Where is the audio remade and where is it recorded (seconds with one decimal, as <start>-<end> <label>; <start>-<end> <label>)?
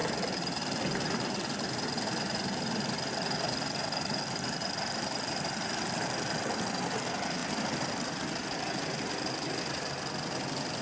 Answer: 0.0-10.8 recorded